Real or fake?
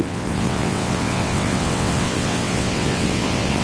fake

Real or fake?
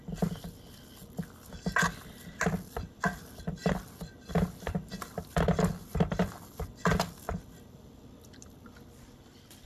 real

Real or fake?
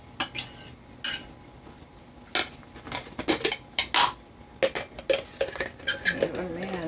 real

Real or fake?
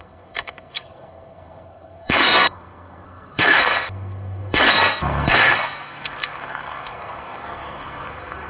fake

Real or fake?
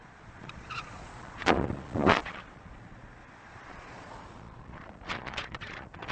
fake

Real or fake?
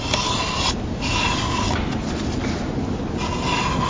real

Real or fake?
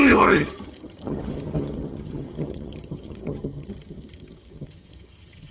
fake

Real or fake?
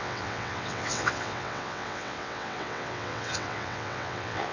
fake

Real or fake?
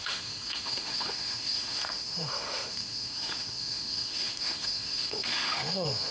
fake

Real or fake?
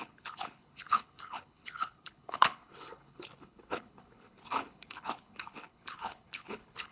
fake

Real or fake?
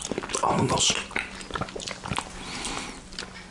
real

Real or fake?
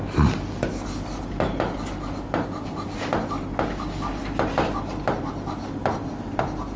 real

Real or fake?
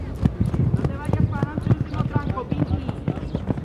real